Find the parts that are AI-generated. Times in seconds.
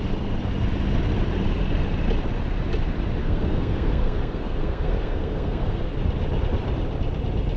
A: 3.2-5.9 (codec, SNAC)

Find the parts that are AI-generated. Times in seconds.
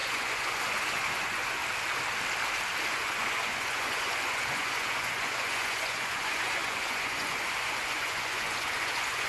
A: 0.0-1.6 (vocoder, Vocos); 2.9-9.3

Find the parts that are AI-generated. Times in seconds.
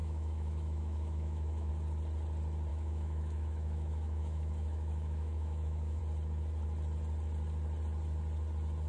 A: 0.0-1.7 (autoencoder, DAC-VAE); 2.7-6.0